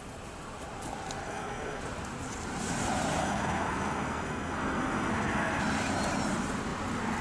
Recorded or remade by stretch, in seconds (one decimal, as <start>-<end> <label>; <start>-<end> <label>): 0.0-1.2 recorded; 1.2-1.8 remade; 1.8-3.2 recorded; 3.2-5.6 remade; 5.6-7.2 recorded